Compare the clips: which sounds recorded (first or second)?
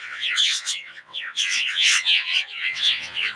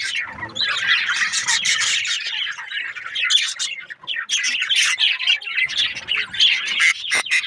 second